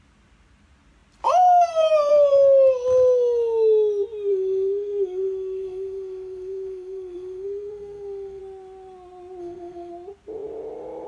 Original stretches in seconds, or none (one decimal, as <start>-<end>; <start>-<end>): 0.0-4.3; 8.4-9.4; 9.9-11.1